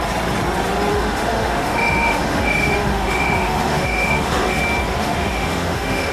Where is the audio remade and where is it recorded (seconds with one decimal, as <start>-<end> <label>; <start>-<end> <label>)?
0.0-0.9 recorded; 0.9-4.6 remade; 4.6-5.0 recorded; 5.0-6.1 remade